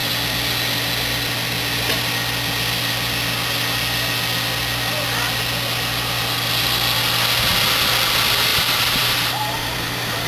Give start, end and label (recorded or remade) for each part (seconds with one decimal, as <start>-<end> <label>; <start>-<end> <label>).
0.0-8.5 recorded; 8.5-10.3 remade